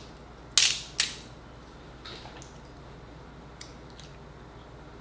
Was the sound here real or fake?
real